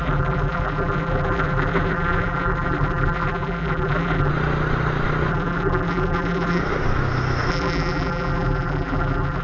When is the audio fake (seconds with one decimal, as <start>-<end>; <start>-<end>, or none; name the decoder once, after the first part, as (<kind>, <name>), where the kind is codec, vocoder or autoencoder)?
0.0-4.3 (vocoder, BigVGAN v2); 5.3-6.6; 7.5-9.4